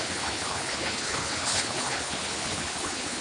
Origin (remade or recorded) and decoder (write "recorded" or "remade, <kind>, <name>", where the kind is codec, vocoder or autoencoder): remade, codec, HILCodec